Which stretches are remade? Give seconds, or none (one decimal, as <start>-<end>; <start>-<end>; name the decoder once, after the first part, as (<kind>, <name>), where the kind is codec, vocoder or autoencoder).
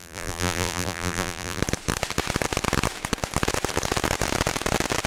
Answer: 0.0-1.6 (vocoder, BigVGAN v2)